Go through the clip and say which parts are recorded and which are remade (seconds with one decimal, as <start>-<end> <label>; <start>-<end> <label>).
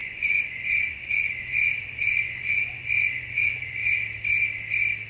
0.0-3.8 remade; 3.8-5.1 recorded